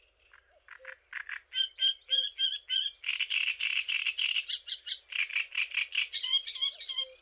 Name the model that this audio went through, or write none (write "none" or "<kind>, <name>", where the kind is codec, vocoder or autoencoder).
none